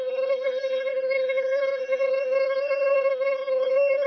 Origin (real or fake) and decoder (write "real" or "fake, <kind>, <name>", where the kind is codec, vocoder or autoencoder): fake, codec, SNAC